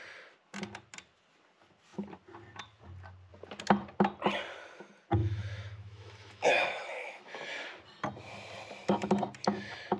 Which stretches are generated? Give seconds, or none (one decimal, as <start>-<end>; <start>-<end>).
5.2-7.5